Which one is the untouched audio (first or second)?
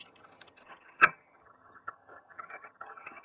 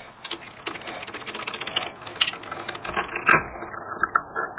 second